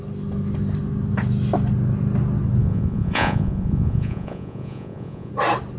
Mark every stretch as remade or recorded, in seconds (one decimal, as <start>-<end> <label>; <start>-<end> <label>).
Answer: 0.0-2.6 recorded; 2.6-5.3 remade; 5.3-5.8 recorded